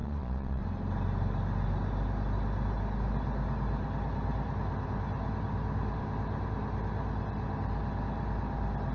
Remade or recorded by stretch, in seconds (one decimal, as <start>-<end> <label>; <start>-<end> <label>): 0.0-0.6 remade; 0.6-8.9 recorded